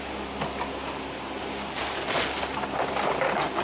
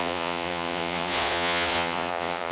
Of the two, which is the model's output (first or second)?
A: second